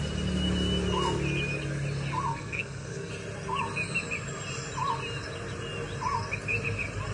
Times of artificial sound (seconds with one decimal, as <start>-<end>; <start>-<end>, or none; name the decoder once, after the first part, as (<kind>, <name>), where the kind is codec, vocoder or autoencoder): 2.3-3.1 (codec, SNAC)